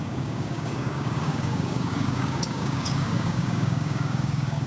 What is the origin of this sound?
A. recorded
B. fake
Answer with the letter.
B